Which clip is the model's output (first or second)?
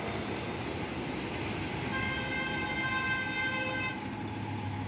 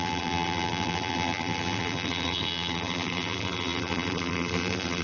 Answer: second